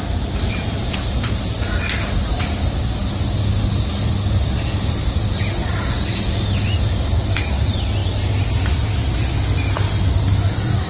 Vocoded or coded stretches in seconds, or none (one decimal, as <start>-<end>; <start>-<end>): none